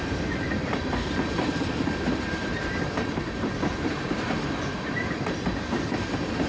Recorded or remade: remade